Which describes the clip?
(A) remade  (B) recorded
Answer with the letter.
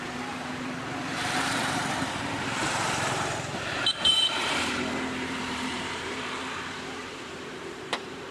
A